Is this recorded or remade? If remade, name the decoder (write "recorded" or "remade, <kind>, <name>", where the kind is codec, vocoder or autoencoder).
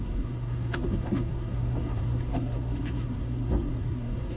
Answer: remade, codec, SNAC